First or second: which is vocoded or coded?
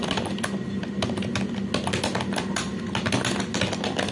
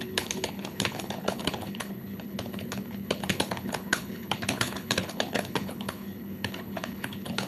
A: second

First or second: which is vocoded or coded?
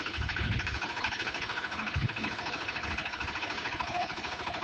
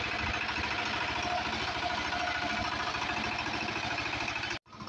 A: first